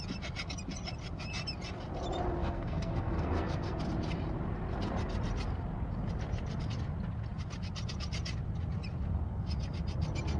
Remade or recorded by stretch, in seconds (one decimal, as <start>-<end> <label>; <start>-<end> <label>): 0.0-2.4 recorded; 2.4-3.8 remade; 3.8-10.4 recorded